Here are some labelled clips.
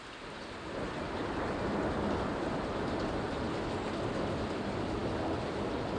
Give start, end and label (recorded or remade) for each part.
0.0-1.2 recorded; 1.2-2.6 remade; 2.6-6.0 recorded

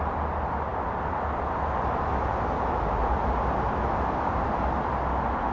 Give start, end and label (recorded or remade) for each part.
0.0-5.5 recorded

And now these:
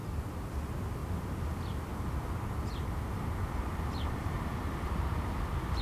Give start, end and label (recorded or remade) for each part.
0.0-0.6 remade; 0.6-3.7 recorded; 3.7-5.8 remade

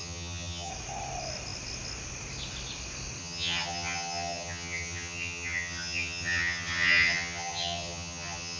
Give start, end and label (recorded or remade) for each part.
0.0-0.7 remade; 0.7-3.2 recorded; 3.2-8.6 remade

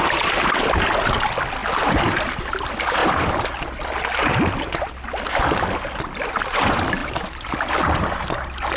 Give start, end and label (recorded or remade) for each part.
0.0-8.8 recorded